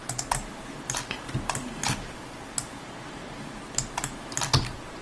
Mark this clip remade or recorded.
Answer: recorded